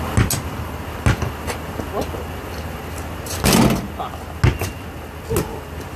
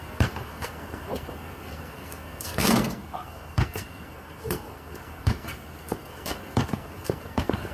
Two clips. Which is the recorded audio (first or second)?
first